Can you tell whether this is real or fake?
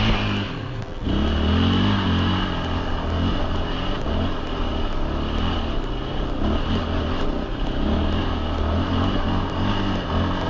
real